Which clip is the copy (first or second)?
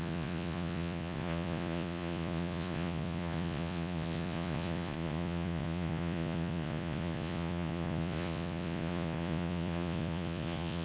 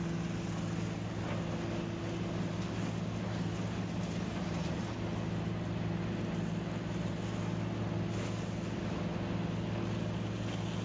first